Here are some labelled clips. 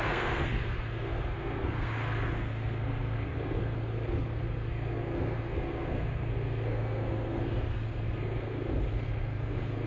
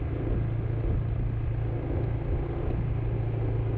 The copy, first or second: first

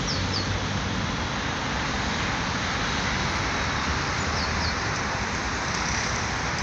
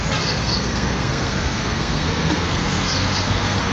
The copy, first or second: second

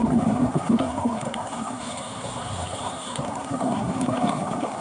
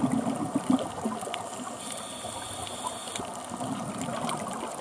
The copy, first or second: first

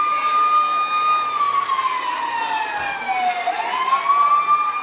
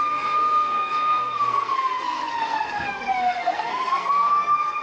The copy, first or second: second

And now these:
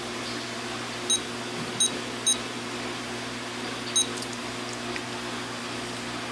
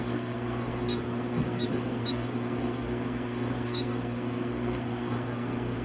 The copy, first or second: second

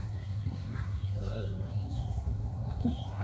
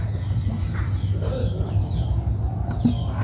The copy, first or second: first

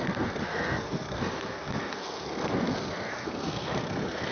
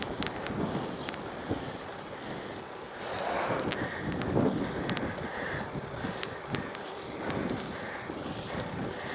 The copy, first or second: first